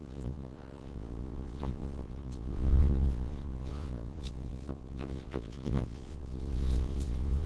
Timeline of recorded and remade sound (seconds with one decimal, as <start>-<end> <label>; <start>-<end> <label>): 0.0-7.5 remade